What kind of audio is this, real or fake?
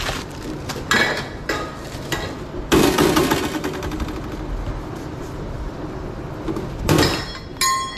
real